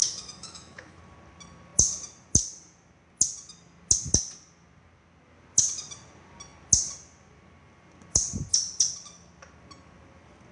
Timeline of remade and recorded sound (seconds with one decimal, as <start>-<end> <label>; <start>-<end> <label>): 0.0-1.0 remade; 1.0-10.5 recorded